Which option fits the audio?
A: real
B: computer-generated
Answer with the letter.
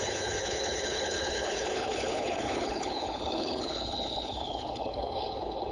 B